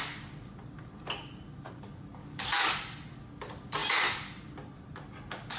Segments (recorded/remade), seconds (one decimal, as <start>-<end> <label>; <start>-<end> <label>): 0.0-2.2 recorded; 2.2-2.7 remade; 2.7-5.6 recorded